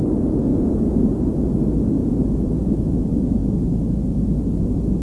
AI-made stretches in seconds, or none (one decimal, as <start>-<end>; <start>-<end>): 0.5-1.5; 2.0-2.7